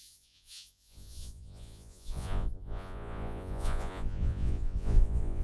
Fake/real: fake